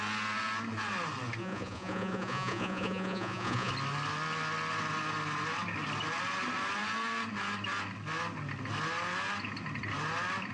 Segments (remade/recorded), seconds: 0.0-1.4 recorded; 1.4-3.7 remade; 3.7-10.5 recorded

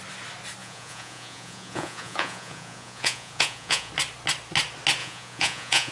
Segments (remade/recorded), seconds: 0.0-0.6 recorded; 0.6-3.9 remade; 3.9-5.0 recorded; 5.0-5.9 remade

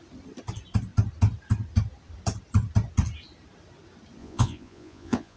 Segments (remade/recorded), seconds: 0.0-4.2 recorded; 4.2-5.4 remade

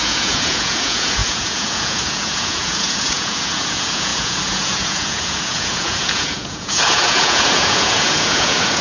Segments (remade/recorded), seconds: 0.0-8.8 remade

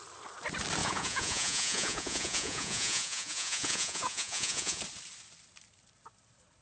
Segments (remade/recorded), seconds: 0.0-0.8 recorded; 0.8-4.8 remade; 4.8-6.6 recorded